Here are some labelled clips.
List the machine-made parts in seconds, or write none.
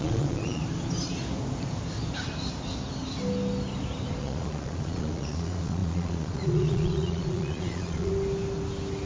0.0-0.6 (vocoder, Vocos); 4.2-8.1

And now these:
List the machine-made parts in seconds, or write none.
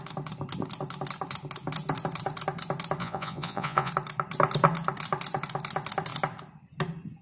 3.0-3.9 (vocoder, Vocos)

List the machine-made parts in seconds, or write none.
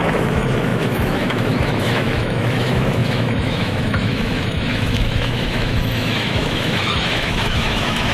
0.0-8.1 (autoencoder, DAC-VAE)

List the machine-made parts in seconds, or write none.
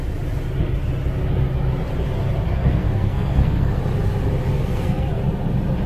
2.5-3.8 (codec, SNAC); 4.5-5.2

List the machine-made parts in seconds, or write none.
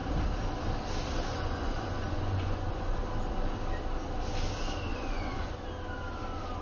1.3-3.0 (vocoder, Vocos); 4.9-5.6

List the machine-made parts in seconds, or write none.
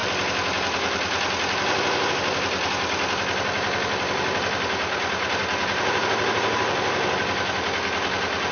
none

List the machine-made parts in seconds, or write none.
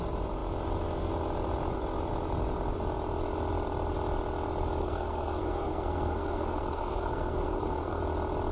4.8-8.0 (codec, SNAC)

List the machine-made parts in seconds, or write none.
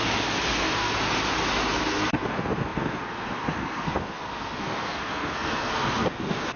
0.5-0.9 (codec, SNAC); 1.8-6.6